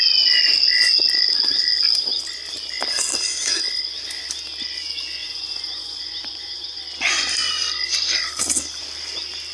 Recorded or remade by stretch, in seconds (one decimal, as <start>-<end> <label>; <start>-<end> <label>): 0.0-5.2 recorded; 5.2-6.8 remade; 6.8-9.5 recorded